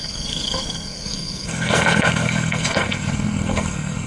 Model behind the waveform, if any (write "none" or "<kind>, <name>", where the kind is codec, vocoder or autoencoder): codec, SNAC